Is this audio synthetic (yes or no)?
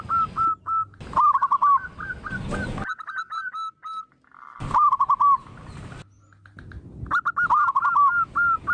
no